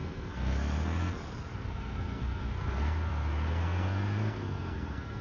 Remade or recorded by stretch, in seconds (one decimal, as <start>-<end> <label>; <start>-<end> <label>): 0.0-5.2 remade